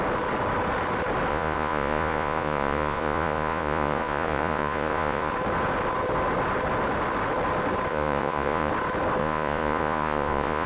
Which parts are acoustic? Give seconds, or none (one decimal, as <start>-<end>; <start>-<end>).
0.0-1.3; 5.3-7.9; 8.7-9.2